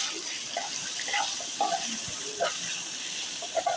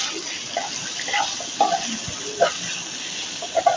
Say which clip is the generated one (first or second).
first